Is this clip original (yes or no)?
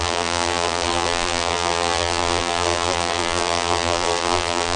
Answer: no